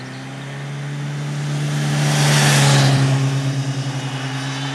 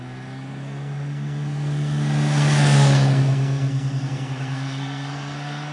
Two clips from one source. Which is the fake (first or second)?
second